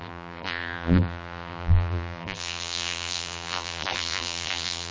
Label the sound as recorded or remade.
remade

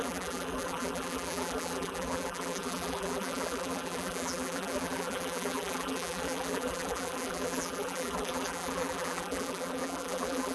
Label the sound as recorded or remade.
remade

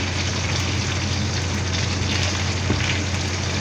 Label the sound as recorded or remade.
recorded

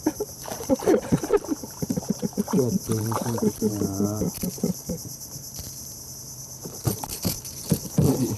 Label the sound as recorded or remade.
remade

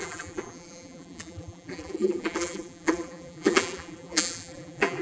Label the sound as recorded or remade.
remade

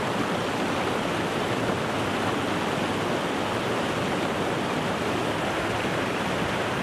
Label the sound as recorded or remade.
recorded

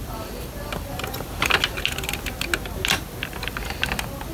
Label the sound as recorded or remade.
recorded